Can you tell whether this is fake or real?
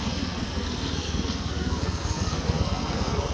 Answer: fake